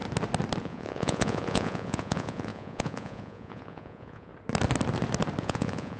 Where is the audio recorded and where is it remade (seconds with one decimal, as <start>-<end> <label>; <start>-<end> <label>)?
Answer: 0.0-0.6 recorded; 0.6-4.3 remade; 4.3-5.4 recorded; 5.4-6.0 remade